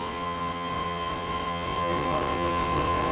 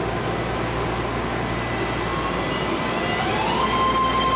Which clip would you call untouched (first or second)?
second